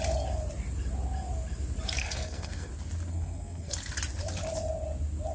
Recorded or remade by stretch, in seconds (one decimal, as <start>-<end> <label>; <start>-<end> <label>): 0.0-2.0 recorded; 2.0-2.7 remade; 2.7-3.1 recorded; 3.1-3.7 remade; 3.7-5.3 recorded